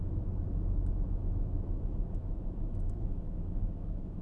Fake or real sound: fake